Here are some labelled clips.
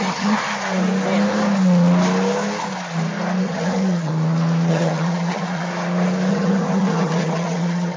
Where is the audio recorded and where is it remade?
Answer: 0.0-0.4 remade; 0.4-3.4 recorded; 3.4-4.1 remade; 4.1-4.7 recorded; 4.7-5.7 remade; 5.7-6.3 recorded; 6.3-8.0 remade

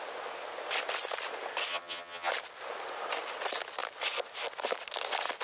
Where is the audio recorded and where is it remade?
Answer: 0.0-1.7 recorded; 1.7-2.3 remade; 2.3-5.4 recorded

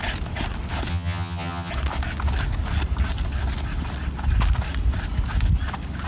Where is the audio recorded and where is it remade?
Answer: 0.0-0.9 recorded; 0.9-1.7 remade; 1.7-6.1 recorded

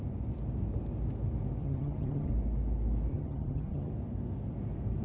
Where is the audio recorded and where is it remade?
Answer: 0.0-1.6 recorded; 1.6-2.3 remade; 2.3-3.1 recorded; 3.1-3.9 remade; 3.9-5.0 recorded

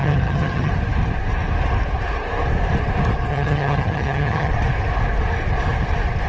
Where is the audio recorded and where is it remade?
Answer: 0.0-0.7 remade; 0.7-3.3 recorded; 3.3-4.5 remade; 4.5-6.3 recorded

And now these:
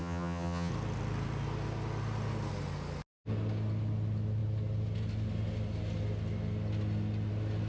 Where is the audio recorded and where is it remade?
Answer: 0.0-0.7 remade; 0.7-7.7 recorded

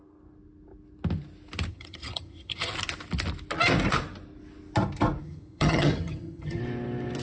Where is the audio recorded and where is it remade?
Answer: 0.0-1.7 recorded; 1.7-2.7 remade; 2.7-5.2 recorded; 5.2-6.6 remade; 6.6-7.2 recorded